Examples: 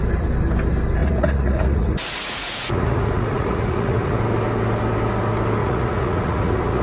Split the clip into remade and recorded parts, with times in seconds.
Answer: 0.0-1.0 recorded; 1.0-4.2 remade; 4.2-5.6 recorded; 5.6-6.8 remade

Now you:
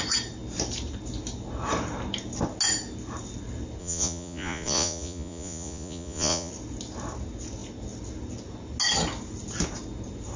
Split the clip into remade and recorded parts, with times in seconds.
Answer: 0.0-3.8 recorded; 3.8-6.5 remade; 6.5-10.4 recorded

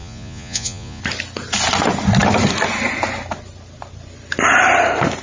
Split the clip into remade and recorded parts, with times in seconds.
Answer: 0.0-1.0 remade; 1.0-5.2 recorded

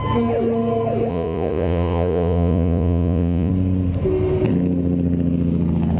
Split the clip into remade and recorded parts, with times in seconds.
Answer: 0.0-1.1 recorded; 1.1-3.5 remade; 3.5-6.0 recorded

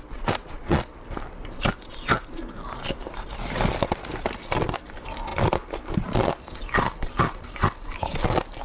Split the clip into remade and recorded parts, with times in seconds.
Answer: 0.0-0.4 recorded; 0.4-0.9 remade; 0.9-8.6 recorded

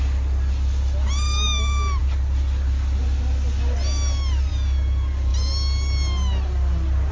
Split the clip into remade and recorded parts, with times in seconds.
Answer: 0.0-7.1 recorded

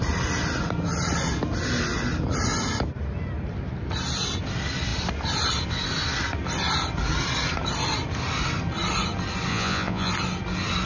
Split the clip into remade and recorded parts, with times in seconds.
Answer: 0.0-9.5 recorded; 9.5-10.1 remade; 10.1-10.9 recorded

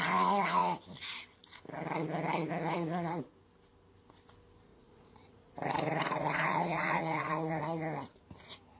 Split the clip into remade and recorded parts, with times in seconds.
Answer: 0.0-4.7 recorded; 4.7-7.6 remade; 7.6-8.8 recorded